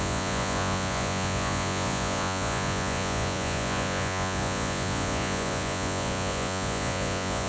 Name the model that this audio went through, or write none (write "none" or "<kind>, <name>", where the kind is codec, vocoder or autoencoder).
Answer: vocoder, Vocos